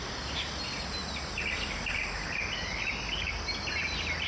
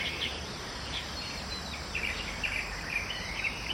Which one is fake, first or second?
second